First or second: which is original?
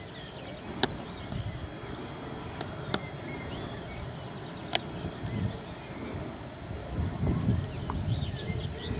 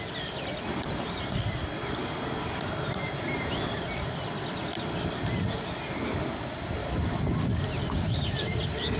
first